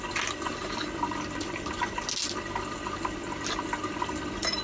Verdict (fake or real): real